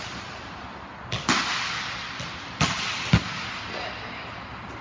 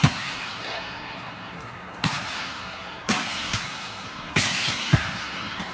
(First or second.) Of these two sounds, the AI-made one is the second